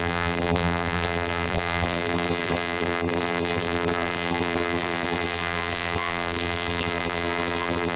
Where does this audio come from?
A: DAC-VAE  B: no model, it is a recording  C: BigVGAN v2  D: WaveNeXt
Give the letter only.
C